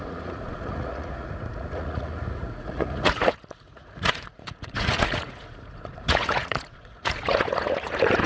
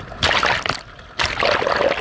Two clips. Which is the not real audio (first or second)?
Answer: first